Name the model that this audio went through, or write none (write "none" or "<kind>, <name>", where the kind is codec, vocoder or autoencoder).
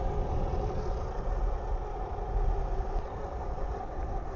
none